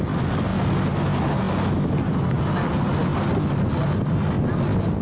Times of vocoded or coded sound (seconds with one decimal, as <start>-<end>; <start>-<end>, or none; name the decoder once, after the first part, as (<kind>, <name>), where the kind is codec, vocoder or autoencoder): none